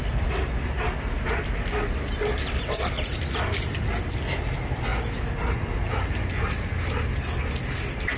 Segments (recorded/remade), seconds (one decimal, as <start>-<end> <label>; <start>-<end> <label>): 0.0-8.2 recorded